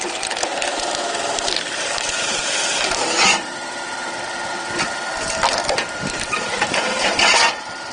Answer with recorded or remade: remade